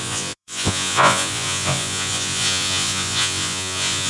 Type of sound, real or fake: fake